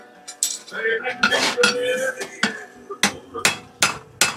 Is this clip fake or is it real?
real